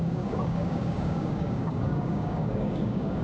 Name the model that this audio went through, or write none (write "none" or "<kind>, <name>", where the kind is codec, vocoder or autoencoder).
codec, DAC